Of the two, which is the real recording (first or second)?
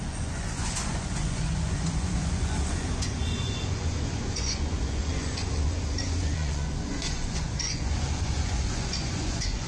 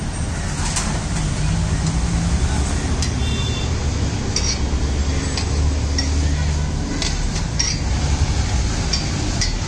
second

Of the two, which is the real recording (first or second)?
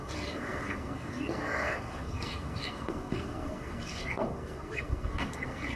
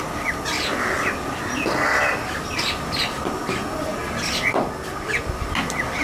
second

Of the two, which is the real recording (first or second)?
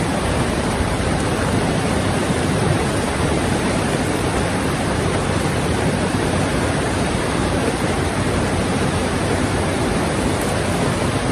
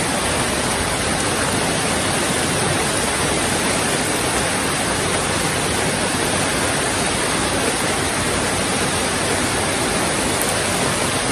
second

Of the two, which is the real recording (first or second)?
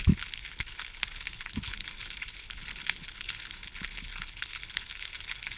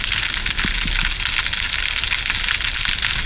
second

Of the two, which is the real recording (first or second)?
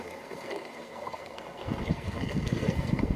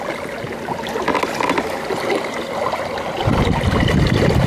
second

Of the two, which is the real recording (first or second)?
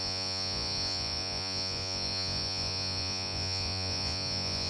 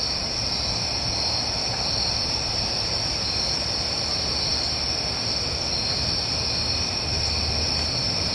second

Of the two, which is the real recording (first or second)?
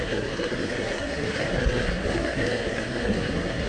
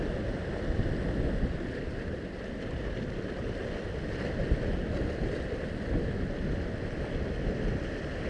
second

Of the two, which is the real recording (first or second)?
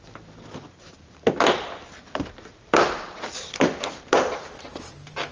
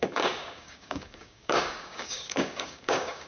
first